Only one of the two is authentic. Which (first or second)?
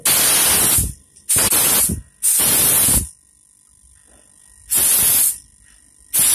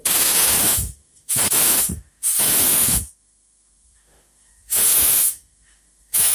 first